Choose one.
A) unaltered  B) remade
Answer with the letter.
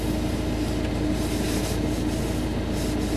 A